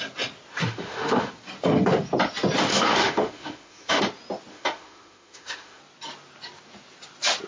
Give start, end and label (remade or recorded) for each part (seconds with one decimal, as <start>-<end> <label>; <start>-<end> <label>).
0.0-0.6 recorded; 0.6-1.3 remade; 1.3-2.7 recorded; 2.7-4.0 remade; 4.0-4.5 recorded; 4.5-5.8 remade; 5.8-7.5 recorded